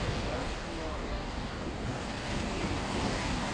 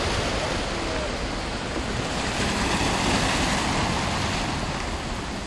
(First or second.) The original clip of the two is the second